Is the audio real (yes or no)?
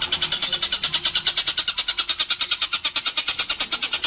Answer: yes